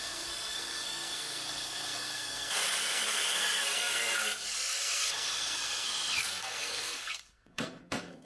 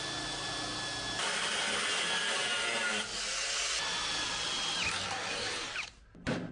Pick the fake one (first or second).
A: first